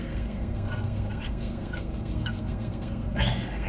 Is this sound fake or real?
fake